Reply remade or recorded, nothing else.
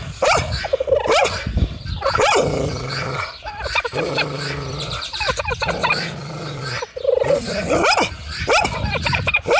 remade